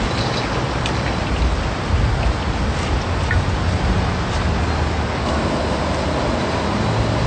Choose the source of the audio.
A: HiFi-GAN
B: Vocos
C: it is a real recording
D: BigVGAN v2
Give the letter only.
C